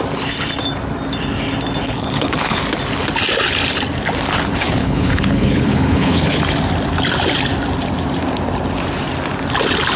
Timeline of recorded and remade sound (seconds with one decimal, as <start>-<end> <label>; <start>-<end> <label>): 0.0-1.8 recorded; 1.8-2.6 remade; 2.6-4.8 recorded; 4.8-6.4 remade; 6.4-10.0 recorded